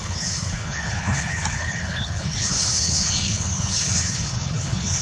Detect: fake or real fake